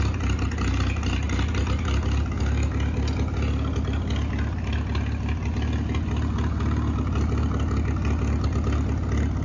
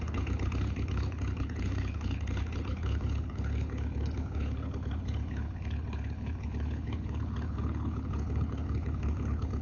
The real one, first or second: first